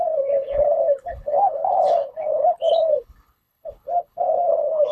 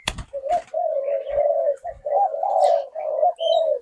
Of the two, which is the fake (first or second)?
first